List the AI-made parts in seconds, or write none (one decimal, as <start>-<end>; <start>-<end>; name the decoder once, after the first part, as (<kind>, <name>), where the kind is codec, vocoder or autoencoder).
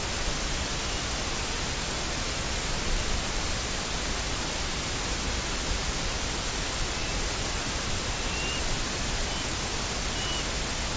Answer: none